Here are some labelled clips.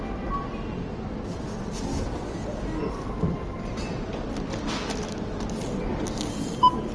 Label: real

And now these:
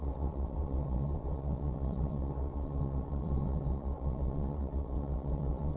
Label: fake